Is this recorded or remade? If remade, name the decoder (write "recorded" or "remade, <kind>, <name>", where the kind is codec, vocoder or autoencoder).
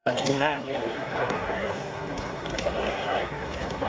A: remade, codec, SNAC